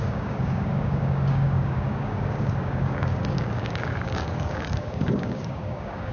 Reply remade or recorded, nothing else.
remade